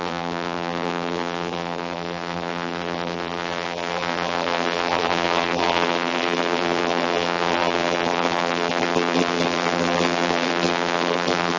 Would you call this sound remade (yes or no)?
yes